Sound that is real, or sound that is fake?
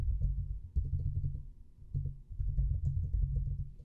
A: real